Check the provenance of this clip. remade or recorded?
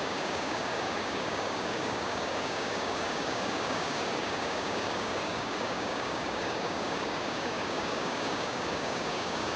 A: remade